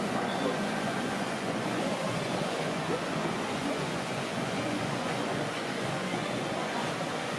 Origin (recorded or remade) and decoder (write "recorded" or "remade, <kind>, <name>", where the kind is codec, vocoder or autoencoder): remade, vocoder, Vocos